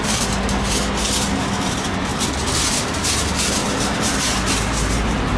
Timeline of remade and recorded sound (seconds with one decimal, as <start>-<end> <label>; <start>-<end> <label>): 0.0-3.6 recorded; 3.6-4.5 remade; 4.5-5.4 recorded